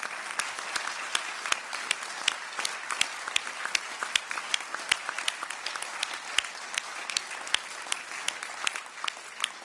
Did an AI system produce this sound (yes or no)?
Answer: no